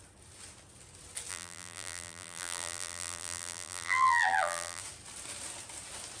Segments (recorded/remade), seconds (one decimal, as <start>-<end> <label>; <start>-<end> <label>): 0.0-1.3 recorded; 1.3-4.8 remade; 4.8-6.2 recorded